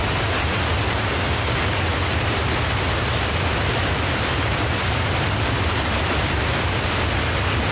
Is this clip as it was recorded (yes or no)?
yes